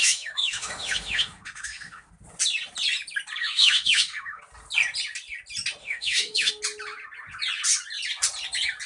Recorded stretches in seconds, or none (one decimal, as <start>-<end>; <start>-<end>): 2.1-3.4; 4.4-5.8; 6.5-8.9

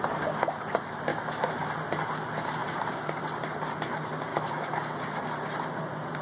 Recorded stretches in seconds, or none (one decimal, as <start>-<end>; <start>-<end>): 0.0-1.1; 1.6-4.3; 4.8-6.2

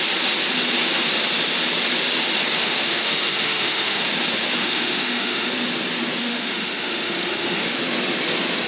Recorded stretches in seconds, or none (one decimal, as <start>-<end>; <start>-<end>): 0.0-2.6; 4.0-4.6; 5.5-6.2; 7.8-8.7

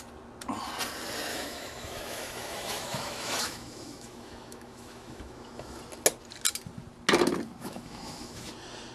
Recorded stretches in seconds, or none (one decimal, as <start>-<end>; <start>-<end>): 0.0-1.3; 5.8-7.6; 8.5-8.9

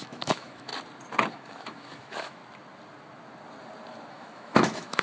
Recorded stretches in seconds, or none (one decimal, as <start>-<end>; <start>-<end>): 0.7-1.3; 2.4-4.1